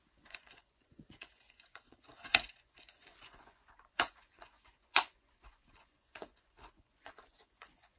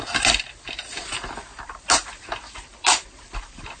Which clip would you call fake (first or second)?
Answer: first